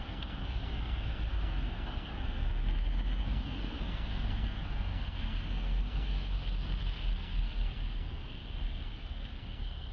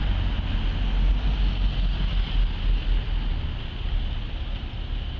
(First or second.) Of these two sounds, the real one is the second